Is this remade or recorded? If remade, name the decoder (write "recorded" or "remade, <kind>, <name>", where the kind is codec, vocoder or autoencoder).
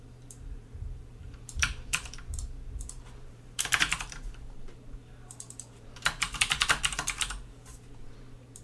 remade, vocoder, BigVGAN v2